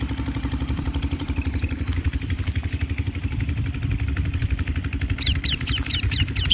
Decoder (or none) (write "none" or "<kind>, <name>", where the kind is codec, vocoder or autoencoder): vocoder, BigVGAN v2